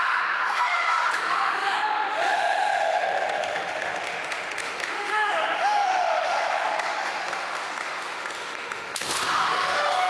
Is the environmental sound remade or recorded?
remade